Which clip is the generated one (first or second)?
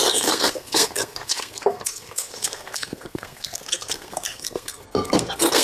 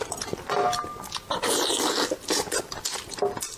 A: first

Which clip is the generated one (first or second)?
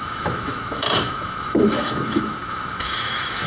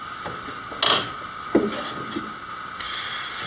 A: first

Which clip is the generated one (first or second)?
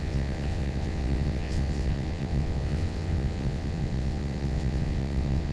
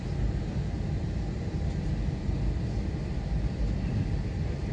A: first